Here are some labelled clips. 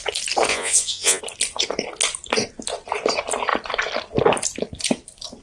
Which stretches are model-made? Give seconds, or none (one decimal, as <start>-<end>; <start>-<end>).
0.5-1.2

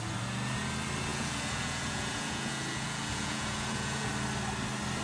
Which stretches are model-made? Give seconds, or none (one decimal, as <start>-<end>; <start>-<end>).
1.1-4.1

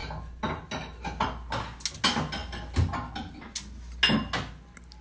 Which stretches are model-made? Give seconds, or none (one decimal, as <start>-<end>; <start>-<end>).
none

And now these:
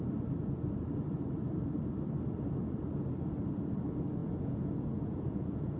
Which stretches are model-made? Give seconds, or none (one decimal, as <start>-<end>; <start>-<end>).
4.2-5.8

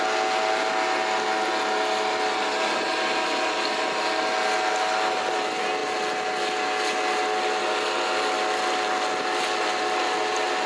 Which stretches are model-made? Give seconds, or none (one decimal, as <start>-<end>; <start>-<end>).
none